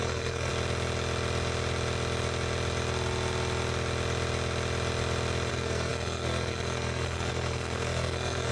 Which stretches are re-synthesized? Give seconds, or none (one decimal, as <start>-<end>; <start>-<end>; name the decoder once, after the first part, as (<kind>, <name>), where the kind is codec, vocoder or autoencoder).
0.0-0.5 (codec, SNAC); 5.5-8.5